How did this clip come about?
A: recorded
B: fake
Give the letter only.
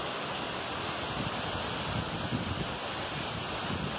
A